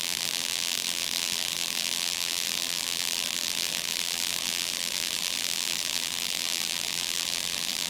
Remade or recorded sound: remade